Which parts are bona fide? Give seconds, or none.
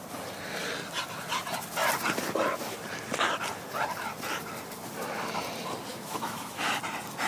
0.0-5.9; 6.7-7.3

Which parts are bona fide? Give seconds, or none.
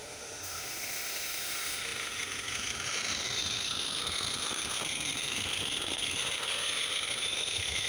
none